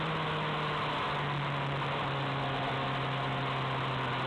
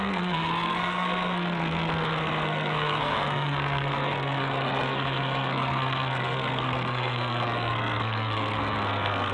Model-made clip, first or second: second